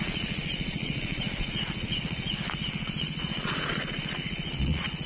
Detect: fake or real fake